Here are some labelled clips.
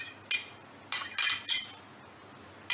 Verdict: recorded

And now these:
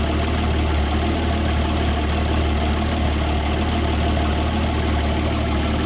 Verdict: recorded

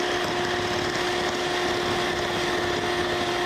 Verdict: recorded